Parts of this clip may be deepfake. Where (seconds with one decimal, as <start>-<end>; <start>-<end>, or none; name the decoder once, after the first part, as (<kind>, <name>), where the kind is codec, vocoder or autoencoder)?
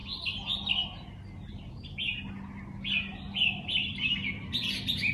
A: none